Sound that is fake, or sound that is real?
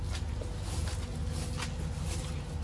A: real